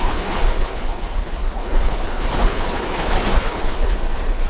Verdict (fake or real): fake